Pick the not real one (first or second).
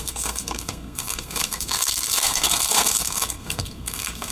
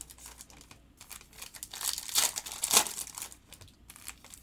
first